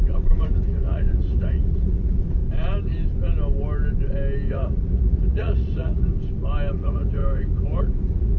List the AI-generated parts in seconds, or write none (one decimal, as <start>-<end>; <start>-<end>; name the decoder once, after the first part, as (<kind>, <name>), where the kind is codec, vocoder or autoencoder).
0.0-2.4 (vocoder, Vocos); 4.5-6.1; 6.7-7.2; 7.8-8.4